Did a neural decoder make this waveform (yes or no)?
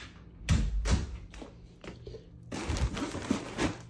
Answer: no